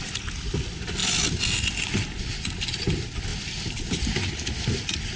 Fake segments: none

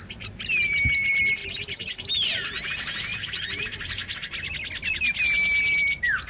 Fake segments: 0.0-4.0; 4.9-6.3

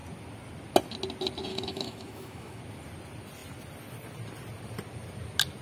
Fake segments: 1.5-2.6